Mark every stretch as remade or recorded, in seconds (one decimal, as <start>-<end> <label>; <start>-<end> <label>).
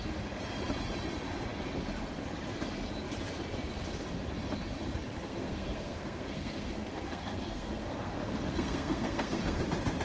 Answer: 0.0-5.1 recorded; 5.1-9.6 remade; 9.6-10.0 recorded